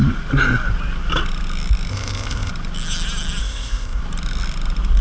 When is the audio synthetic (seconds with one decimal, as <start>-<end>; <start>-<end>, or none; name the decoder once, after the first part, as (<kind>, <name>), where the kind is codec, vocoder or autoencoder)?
1.9-2.5 (codec, ZipCodec); 3.4-4.0